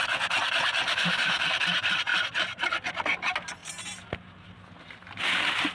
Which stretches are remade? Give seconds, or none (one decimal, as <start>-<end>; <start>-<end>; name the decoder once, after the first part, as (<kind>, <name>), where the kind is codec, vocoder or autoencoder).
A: 0.9-1.4 (autoencoder, DAC-VAE)